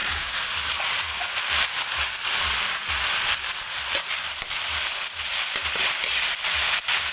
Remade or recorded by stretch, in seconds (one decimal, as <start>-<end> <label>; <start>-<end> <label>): 0.0-7.1 recorded